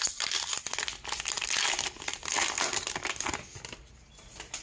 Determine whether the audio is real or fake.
real